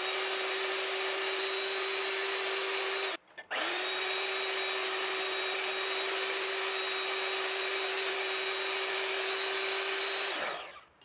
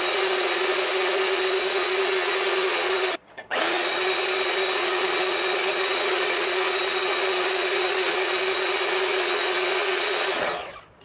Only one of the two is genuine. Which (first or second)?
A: first